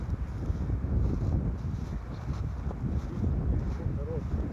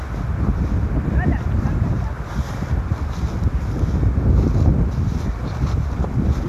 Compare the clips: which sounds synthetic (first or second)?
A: second